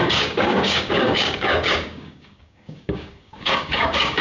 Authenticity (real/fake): fake